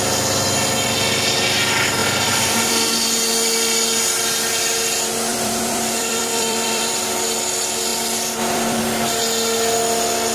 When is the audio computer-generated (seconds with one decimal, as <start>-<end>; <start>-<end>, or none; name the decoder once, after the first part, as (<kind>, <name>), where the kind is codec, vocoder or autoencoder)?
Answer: 2.0-2.7 (vocoder, BigVGAN v2); 5.3-7.1; 7.9-8.8